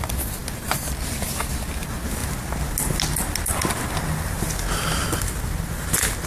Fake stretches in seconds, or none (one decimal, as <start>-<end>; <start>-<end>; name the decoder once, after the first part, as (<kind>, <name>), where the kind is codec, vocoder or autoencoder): none